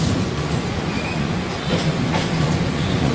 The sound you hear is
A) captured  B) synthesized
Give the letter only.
B